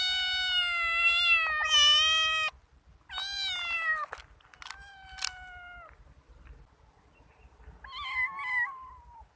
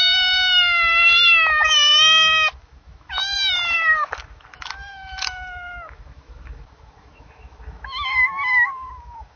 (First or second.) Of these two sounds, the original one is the first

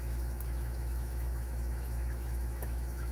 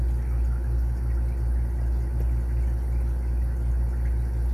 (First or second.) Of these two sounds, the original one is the second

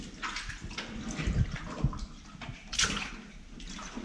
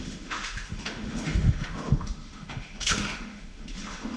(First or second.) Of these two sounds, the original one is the first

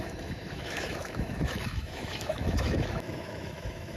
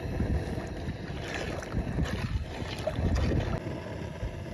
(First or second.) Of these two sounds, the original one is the second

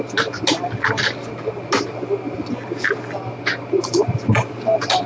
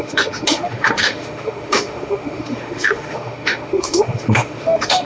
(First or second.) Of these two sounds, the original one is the first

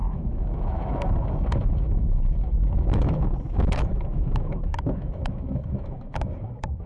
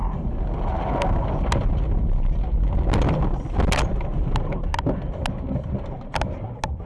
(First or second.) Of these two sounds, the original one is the second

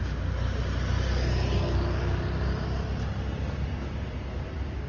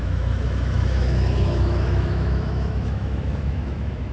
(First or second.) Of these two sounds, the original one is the first